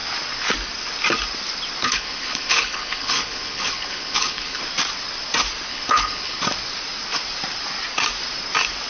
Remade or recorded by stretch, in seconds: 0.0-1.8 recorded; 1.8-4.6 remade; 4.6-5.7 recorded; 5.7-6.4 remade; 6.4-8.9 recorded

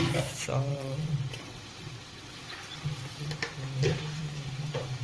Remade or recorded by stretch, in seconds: 0.0-0.7 recorded; 0.7-3.3 remade; 3.3-5.0 recorded

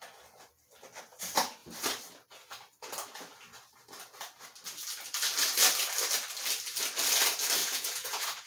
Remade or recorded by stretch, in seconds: 0.0-7.6 recorded; 7.6-8.5 remade